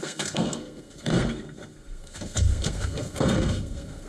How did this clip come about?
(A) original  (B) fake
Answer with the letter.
B